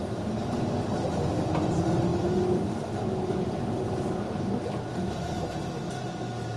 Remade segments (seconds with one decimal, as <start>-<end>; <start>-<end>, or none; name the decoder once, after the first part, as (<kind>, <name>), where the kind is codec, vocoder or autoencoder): none